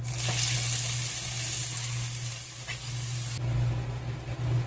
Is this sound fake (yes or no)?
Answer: no